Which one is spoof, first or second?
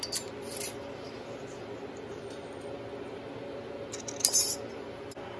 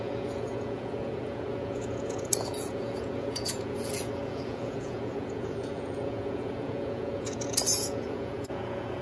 second